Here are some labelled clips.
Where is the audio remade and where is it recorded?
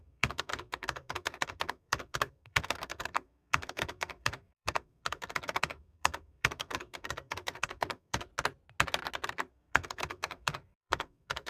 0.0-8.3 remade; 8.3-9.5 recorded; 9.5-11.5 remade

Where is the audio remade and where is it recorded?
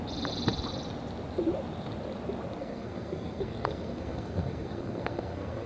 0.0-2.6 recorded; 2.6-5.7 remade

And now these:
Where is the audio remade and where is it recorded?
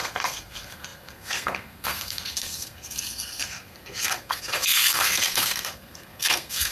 0.0-6.7 remade